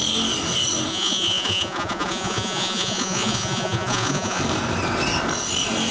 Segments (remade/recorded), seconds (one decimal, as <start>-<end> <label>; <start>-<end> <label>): 0.0-0.9 recorded; 0.9-4.4 remade; 4.4-5.9 recorded